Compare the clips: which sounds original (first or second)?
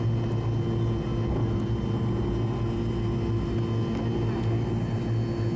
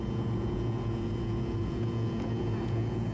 first